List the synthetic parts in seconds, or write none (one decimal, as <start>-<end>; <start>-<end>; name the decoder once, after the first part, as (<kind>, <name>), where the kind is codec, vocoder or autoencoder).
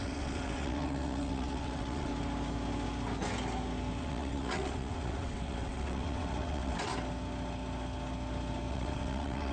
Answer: 0.0-2.1 (vocoder, WaveNeXt); 4.0-6.9; 8.7-9.5